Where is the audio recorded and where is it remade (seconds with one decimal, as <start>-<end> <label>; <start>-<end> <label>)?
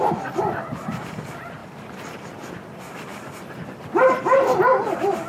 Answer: 0.0-3.1 remade; 3.1-4.8 recorded; 4.8-5.3 remade